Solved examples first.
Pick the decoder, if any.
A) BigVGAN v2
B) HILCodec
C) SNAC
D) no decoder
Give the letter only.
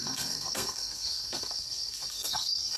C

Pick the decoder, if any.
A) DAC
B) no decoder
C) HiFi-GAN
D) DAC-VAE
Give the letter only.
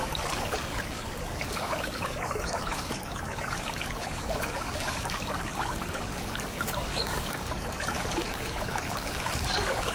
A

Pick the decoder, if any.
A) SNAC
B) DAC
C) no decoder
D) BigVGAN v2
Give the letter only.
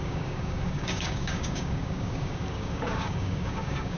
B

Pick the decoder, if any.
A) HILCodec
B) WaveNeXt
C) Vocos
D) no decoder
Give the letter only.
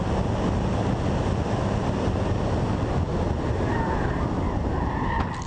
D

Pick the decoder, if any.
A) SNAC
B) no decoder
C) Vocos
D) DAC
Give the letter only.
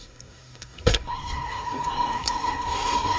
A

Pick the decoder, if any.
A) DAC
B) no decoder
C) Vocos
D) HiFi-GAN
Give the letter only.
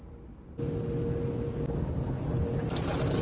B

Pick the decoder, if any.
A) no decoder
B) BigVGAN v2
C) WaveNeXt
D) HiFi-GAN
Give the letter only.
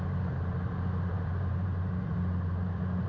B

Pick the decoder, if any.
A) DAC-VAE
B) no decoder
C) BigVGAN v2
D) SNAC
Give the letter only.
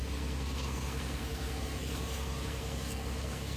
D